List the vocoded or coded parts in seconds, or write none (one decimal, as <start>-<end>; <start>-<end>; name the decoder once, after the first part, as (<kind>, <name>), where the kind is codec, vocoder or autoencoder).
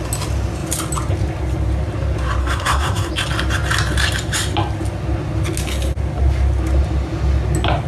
2.4-3.1 (codec, SNAC)